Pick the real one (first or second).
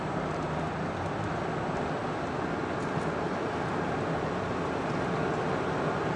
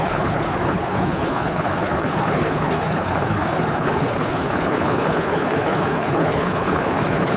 first